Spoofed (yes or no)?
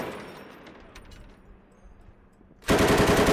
no